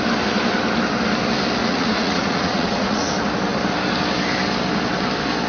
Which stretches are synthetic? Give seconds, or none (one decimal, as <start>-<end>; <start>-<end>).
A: 1.6-3.1